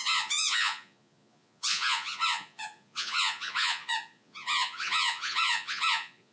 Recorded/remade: remade